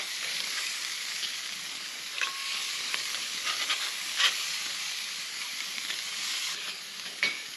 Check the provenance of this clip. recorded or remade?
remade